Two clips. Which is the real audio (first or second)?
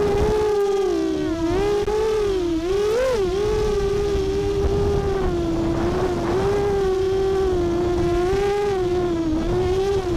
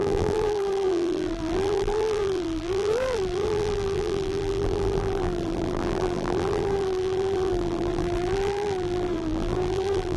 first